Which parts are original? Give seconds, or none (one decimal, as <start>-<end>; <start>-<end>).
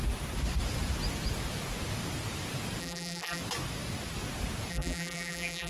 0.0-2.8; 3.4-4.7